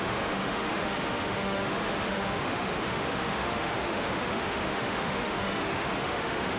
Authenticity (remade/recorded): remade